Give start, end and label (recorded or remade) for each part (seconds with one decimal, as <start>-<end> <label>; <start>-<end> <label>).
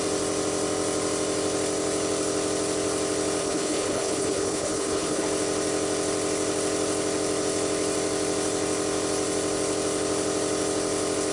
0.0-3.4 recorded; 3.4-5.2 remade; 5.2-11.3 recorded